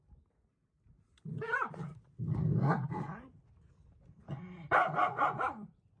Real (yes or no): yes